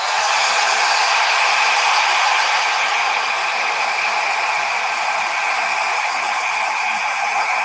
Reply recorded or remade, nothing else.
recorded